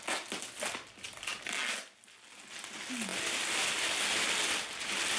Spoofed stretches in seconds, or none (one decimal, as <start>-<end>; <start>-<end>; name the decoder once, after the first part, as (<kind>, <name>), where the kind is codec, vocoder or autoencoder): 3.1-4.1 (vocoder, BigVGAN v2)